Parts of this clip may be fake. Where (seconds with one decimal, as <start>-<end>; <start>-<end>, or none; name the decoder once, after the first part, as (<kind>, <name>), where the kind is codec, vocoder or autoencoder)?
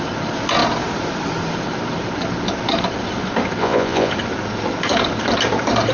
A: 3.6-4.1 (vocoder, Vocos)